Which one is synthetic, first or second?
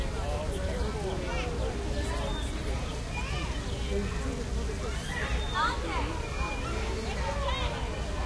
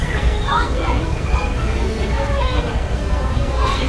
second